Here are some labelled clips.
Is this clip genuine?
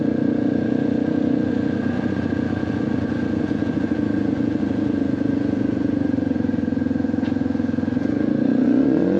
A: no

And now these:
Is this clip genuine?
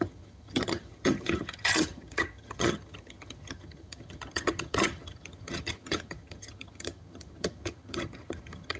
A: no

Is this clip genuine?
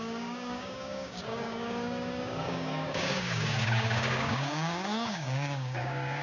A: no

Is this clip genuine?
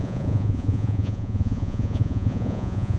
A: no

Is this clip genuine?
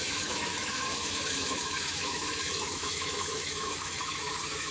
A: no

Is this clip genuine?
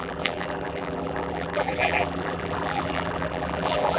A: no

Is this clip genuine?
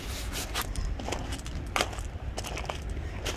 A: yes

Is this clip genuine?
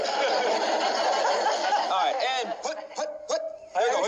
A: yes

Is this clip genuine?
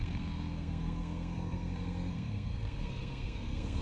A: no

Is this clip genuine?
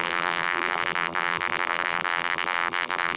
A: no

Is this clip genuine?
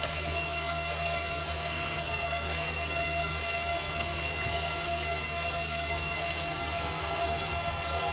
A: no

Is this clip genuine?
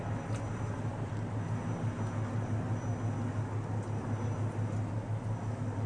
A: yes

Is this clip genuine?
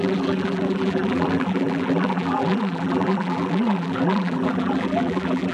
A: no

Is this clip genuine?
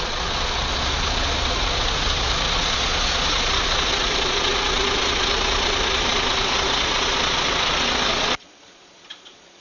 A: no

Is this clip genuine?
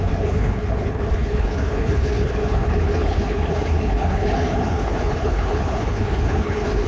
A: no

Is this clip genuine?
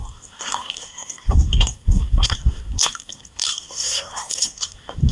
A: no